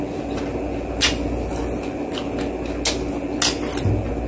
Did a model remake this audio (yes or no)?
no